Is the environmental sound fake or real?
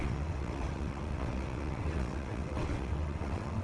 fake